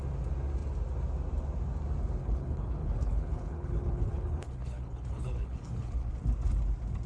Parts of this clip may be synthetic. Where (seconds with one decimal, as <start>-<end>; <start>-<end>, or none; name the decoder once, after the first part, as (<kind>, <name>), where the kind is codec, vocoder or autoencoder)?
2.2-6.1 (codec, HILCodec)